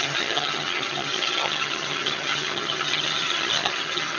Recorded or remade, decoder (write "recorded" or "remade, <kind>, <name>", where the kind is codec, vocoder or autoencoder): remade, vocoder, HiFi-GAN